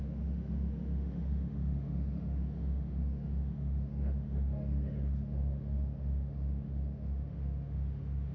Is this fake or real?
fake